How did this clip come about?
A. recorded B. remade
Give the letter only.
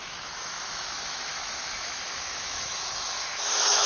B